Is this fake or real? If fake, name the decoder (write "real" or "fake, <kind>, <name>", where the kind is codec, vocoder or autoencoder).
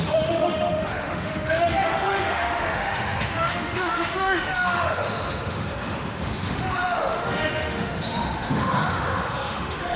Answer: fake, autoencoder, DAC-VAE